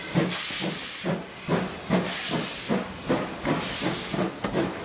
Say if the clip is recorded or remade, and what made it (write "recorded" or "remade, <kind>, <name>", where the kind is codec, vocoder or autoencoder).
recorded